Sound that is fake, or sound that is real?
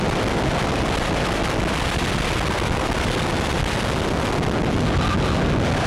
real